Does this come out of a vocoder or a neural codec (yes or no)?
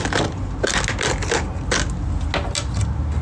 no